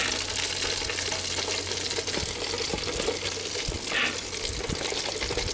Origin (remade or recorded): recorded